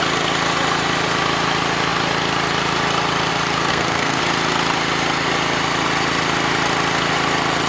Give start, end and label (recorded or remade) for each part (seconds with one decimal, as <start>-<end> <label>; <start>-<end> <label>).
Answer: 0.0-3.7 recorded; 3.7-4.2 remade; 4.2-7.7 recorded